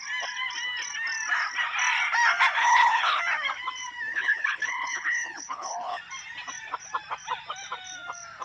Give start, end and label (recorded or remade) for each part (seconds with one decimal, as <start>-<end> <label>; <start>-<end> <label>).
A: 0.0-2.6 recorded; 2.6-3.2 remade; 3.2-4.1 recorded; 4.1-6.0 remade; 6.0-8.4 recorded